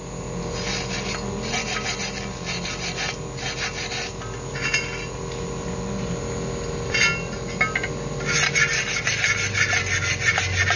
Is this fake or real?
real